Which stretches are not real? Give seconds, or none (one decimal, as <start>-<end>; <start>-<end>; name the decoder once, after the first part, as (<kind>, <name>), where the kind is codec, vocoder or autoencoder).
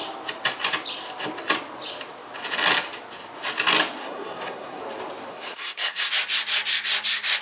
4.0-4.8 (codec, SNAC); 5.3-6.1